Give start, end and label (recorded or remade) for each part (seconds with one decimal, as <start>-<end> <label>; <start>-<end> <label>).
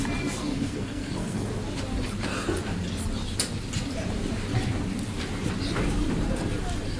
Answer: 0.0-0.4 recorded; 0.4-1.5 remade; 1.5-7.0 recorded